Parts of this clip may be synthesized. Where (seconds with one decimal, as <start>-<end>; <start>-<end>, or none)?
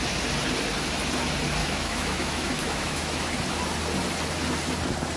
1.6-3.3